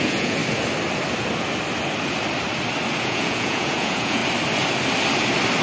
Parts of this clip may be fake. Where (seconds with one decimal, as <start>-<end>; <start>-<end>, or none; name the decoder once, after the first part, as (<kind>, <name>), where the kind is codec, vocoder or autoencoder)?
0.0-0.4 (vocoder, Vocos); 3.0-4.2